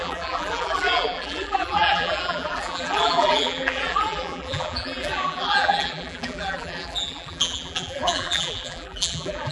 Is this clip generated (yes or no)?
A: yes